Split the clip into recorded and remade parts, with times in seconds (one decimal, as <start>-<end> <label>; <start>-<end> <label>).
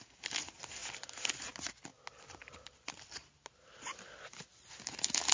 0.0-5.3 recorded